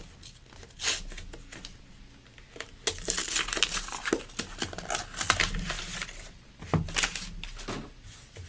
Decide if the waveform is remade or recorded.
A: recorded